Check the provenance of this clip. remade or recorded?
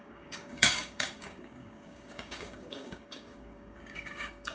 remade